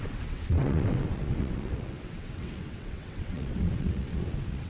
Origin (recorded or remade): remade